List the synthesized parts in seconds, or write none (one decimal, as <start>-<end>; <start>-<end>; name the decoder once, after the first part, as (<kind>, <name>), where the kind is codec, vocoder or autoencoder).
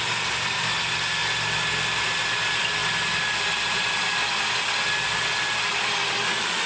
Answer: none